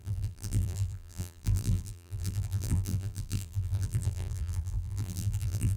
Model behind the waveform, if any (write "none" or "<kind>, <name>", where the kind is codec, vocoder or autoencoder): vocoder, BigVGAN v2